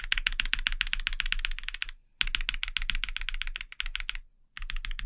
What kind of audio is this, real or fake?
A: real